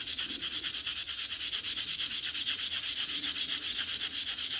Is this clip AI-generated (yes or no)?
yes